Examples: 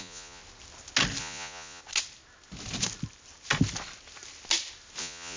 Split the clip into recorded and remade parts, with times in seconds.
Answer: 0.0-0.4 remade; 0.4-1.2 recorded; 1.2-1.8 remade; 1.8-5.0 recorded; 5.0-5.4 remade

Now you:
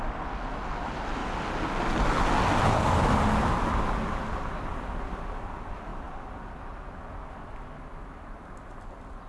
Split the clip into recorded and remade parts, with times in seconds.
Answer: 0.0-9.3 recorded

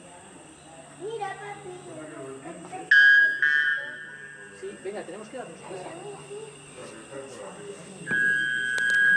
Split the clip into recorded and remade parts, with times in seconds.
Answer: 0.0-9.2 recorded

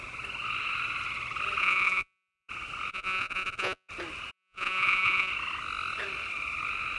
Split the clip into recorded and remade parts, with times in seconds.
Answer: 0.0-1.6 recorded; 1.6-2.5 remade; 2.5-2.9 recorded; 2.9-3.9 remade; 3.9-4.3 recorded; 4.3-5.3 remade; 5.3-7.0 recorded

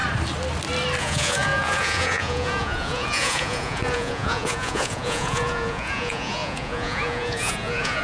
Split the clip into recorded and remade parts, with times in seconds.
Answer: 0.0-1.0 recorded; 1.0-8.0 remade

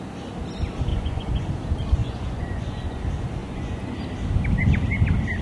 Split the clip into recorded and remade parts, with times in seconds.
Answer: 0.0-0.9 recorded; 0.9-1.5 remade; 1.5-2.0 recorded; 2.0-3.0 remade; 3.0-3.4 recorded; 3.4-4.0 remade; 4.0-5.4 recorded

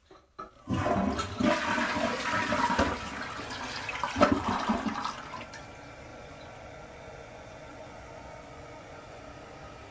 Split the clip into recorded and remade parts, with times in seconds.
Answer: 0.0-6.1 recorded; 6.1-9.2 remade; 9.2-9.9 recorded

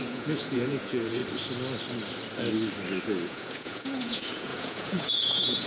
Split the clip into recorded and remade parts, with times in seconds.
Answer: 0.0-1.2 remade; 1.2-3.0 recorded; 3.0-5.7 remade